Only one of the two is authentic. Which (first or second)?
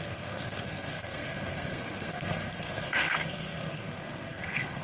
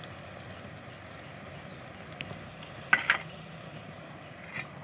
second